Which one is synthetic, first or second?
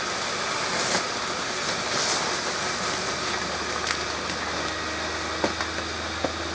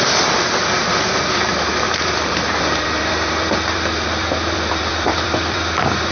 second